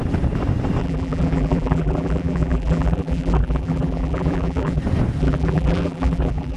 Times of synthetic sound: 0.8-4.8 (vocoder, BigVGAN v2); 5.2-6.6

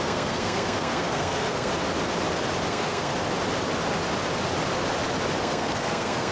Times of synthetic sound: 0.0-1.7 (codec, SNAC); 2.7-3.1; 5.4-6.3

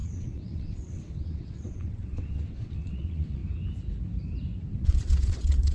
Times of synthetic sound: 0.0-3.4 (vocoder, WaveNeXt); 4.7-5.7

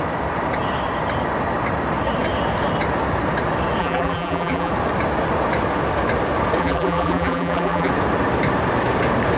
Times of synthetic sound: 3.8-4.7 (vocoder, BigVGAN v2); 6.6-7.9

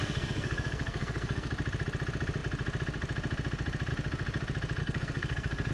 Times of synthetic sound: 0.0-1.5 (codec, SNAC); 4.8-5.7

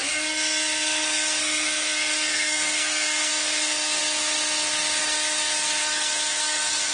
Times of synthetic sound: 0.0-4.0 (codec, SNAC); 5.0-6.9

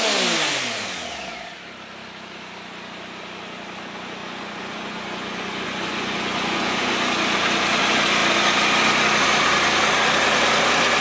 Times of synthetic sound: 4.2-6.9 (vocoder, Vocos)

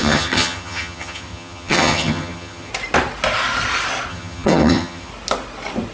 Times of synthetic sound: 0.0-2.7 (vocoder, HiFi-GAN); 4.1-5.1